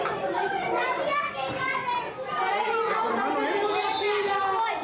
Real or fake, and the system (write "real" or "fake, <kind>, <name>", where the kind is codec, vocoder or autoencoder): real